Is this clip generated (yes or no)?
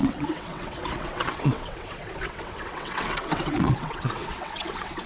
yes